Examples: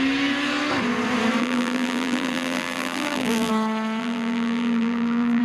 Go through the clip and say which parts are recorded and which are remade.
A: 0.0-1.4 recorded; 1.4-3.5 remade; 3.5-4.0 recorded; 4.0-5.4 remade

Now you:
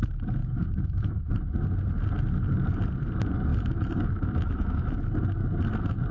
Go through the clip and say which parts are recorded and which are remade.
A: 0.0-0.4 recorded; 0.4-1.3 remade; 1.3-3.5 recorded; 3.5-5.0 remade; 5.0-6.1 recorded

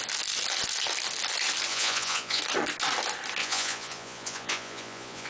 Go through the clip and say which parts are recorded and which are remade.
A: 0.0-1.7 recorded; 1.7-2.4 remade; 2.4-3.4 recorded; 3.4-5.3 remade

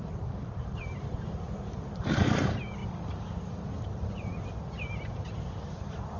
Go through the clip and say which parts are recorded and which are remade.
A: 0.0-6.2 recorded

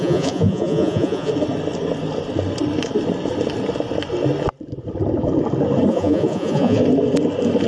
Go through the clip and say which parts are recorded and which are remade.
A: 0.0-1.3 remade; 1.3-5.9 recorded; 5.9-6.8 remade; 6.8-7.7 recorded

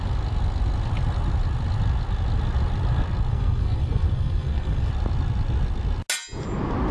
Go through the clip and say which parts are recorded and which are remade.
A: 0.0-3.3 recorded; 3.3-4.9 remade; 4.9-6.9 recorded